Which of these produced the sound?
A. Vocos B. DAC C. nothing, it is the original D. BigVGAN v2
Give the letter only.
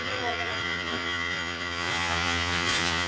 A